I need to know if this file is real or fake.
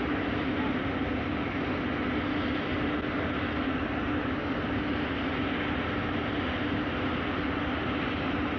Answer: real